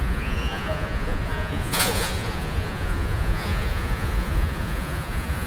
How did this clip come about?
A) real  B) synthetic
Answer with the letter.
B